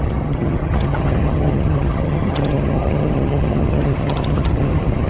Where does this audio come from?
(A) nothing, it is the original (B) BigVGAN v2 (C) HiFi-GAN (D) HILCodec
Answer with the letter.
C